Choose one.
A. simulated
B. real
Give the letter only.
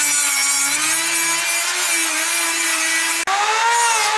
B